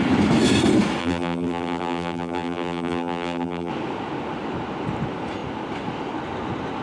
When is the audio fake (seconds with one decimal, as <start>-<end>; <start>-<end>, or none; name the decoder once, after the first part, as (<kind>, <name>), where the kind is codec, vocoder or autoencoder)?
1.0-3.7 (vocoder, BigVGAN v2)

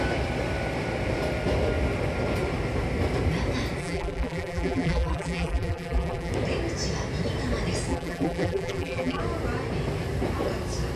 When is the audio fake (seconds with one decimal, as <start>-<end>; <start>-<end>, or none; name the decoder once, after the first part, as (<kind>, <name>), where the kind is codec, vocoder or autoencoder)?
3.8-6.3 (vocoder, BigVGAN v2); 7.9-9.2